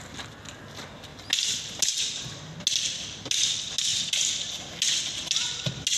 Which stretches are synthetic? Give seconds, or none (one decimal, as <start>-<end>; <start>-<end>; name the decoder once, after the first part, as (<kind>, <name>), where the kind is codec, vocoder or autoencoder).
none